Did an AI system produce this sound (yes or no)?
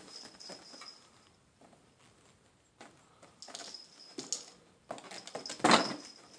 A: no